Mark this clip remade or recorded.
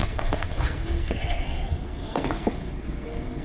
remade